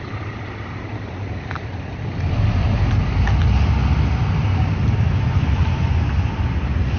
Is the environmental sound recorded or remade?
recorded